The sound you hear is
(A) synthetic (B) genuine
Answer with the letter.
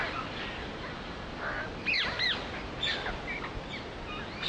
B